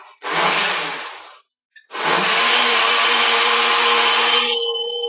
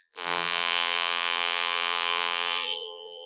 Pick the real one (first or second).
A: first